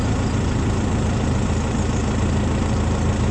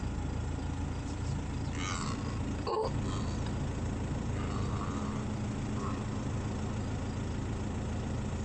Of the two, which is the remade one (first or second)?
first